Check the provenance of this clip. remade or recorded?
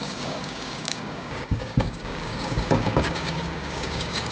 remade